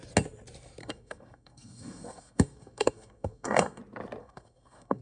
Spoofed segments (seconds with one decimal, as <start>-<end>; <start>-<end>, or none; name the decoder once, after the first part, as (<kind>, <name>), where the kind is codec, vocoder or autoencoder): 0.8-3.8 (codec, SNAC); 4.2-5.0